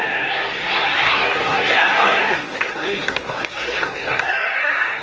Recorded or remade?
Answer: remade